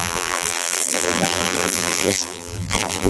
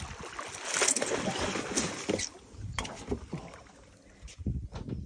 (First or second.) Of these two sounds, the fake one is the first